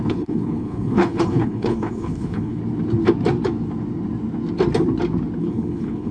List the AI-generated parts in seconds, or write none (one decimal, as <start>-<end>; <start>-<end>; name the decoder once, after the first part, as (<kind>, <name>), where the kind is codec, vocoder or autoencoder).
0.0-2.6 (codec, HILCodec); 5.4-6.1